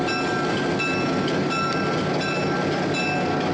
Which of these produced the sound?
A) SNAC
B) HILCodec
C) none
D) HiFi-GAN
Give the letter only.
C